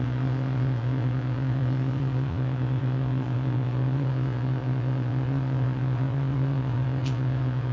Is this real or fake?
fake